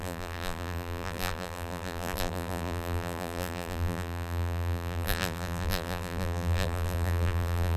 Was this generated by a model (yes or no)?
yes